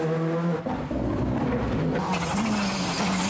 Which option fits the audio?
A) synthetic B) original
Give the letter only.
B